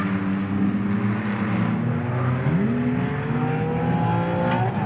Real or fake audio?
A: real